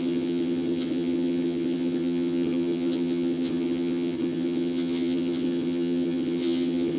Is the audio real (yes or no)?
no